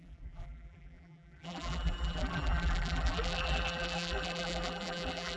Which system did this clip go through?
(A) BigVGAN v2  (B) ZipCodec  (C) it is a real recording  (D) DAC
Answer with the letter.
A